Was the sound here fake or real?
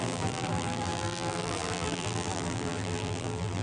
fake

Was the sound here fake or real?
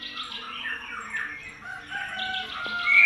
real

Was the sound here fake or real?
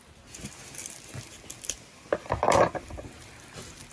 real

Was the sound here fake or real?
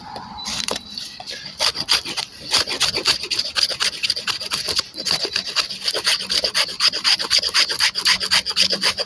fake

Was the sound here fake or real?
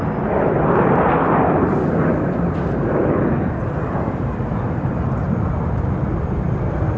real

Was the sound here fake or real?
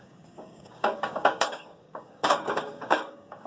fake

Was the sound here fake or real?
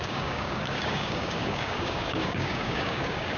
fake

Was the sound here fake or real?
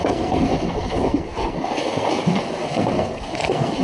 fake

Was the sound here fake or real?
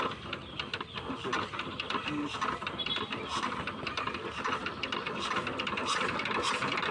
fake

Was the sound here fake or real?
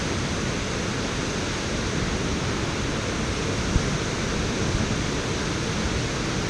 real